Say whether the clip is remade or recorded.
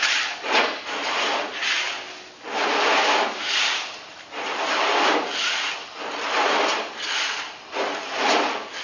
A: recorded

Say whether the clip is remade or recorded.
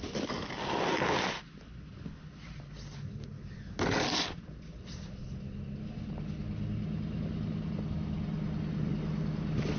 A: recorded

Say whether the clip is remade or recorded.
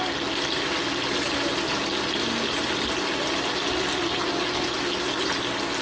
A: recorded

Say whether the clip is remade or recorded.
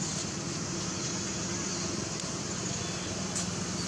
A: recorded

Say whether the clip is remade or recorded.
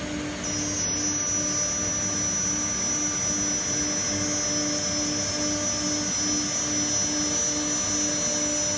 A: recorded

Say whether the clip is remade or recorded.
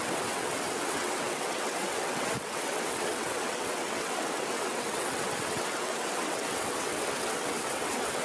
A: remade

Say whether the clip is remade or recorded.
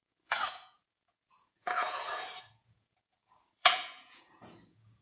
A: remade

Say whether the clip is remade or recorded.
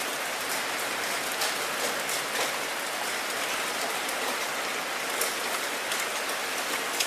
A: recorded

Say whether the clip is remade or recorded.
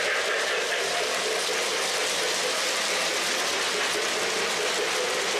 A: recorded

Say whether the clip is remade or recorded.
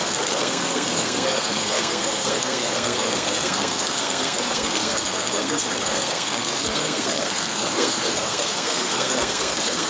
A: remade